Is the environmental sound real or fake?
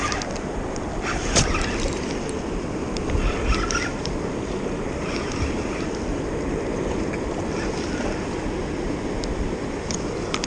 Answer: real